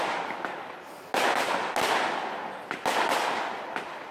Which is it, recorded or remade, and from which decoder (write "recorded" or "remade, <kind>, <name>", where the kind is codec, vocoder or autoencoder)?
recorded